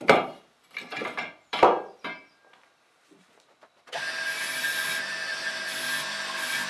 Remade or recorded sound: remade